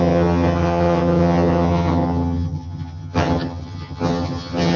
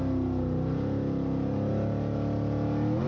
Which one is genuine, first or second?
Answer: second